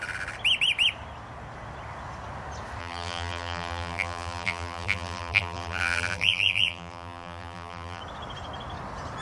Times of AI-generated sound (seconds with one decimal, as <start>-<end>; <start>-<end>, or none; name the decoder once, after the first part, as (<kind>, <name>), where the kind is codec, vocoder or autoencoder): 2.8-8.0 (vocoder, BigVGAN v2)